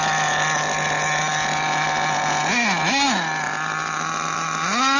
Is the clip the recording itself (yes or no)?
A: yes